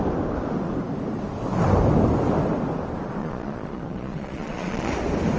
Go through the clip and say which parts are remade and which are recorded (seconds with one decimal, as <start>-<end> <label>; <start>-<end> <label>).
0.0-3.2 recorded; 3.2-4.9 remade; 4.9-5.4 recorded